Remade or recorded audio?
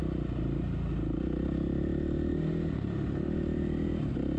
recorded